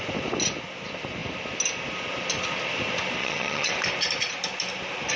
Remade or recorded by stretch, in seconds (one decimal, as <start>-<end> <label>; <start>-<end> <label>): 0.0-3.2 recorded; 3.2-3.7 remade; 3.7-5.2 recorded